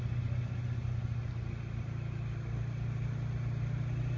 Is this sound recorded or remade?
recorded